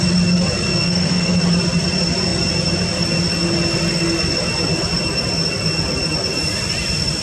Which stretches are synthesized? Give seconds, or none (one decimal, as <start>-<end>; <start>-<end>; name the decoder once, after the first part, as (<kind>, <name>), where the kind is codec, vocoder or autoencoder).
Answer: 0.7-1.4 (codec, SNAC)